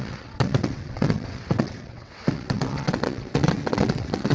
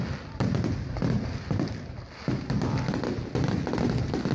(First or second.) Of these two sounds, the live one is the second